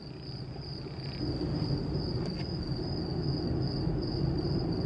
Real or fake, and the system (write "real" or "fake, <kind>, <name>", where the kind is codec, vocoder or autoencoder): fake, vocoder, BigVGAN v2